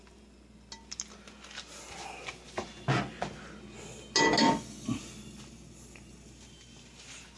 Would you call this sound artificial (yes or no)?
no